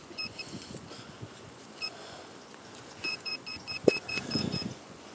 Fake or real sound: fake